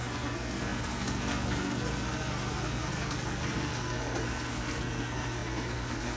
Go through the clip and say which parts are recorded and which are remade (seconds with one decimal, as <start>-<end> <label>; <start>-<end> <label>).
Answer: 0.0-6.2 remade